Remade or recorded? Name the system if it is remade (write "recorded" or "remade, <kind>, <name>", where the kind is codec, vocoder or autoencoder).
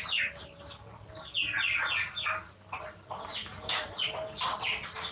recorded